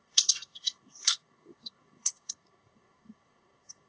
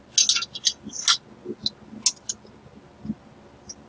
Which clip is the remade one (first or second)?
first